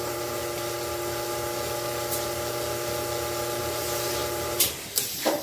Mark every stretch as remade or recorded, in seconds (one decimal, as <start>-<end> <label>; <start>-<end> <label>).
0.0-0.4 remade; 0.4-3.6 recorded; 3.6-5.4 remade